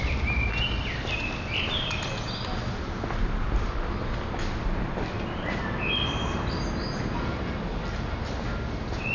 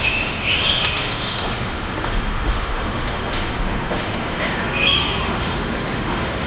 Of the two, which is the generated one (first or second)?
second